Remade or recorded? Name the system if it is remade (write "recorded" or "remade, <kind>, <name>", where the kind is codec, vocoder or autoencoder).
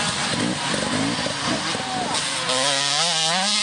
recorded